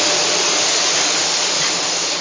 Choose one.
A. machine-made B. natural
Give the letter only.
B